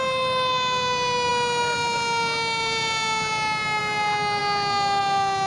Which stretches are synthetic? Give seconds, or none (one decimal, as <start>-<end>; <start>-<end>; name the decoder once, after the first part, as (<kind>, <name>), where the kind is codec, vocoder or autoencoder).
none